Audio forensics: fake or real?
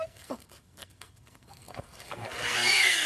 fake